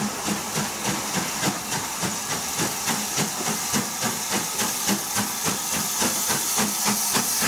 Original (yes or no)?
yes